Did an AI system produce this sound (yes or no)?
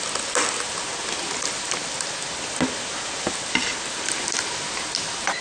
no